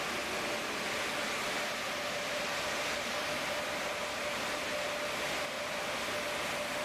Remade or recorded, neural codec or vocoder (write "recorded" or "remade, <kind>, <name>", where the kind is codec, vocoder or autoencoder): recorded